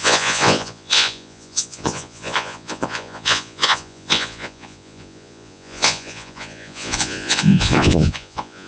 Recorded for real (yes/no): no